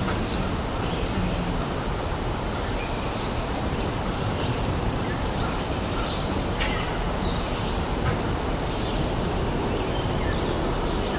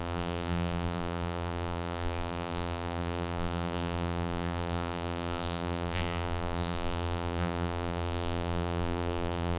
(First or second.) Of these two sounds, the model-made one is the second